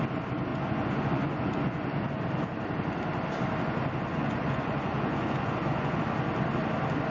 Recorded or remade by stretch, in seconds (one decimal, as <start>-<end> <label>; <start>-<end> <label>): 0.0-0.5 recorded; 0.5-2.2 remade; 2.2-4.1 recorded; 4.1-6.0 remade; 6.0-7.1 recorded